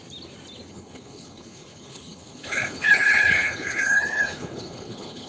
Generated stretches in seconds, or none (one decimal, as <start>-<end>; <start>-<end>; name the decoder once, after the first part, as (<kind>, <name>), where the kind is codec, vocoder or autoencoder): 0.7-5.3 (codec, HILCodec)